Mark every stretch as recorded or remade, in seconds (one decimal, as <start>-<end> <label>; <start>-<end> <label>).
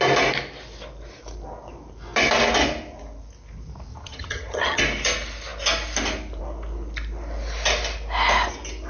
0.0-3.9 recorded; 3.9-4.8 remade; 4.8-8.9 recorded